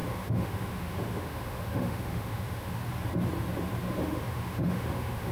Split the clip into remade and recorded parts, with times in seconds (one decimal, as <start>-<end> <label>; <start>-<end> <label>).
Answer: 0.0-2.8 remade; 2.8-3.8 recorded; 3.8-5.3 remade